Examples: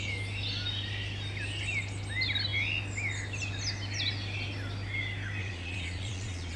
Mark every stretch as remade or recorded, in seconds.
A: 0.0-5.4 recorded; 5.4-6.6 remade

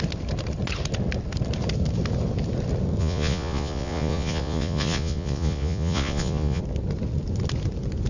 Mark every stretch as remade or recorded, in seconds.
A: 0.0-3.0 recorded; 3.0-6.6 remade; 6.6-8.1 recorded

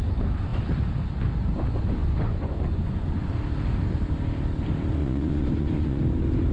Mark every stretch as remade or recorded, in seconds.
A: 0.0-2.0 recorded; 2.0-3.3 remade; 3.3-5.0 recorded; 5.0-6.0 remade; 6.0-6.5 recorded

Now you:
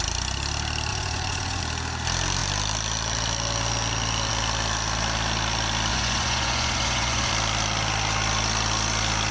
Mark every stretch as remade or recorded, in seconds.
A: 0.0-0.9 recorded; 0.9-1.6 remade; 1.6-5.9 recorded; 5.9-7.3 remade; 7.3-9.3 recorded

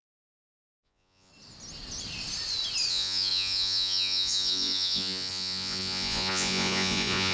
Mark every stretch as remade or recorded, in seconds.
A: 0.0-1.3 remade; 1.3-2.9 recorded; 2.9-7.3 remade

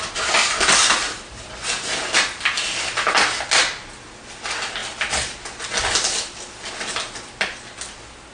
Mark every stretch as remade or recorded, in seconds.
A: 0.0-8.3 recorded